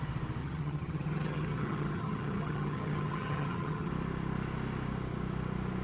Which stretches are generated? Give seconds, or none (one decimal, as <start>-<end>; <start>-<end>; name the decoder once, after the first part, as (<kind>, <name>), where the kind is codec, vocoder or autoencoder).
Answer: 0.4-3.9 (vocoder, HiFi-GAN)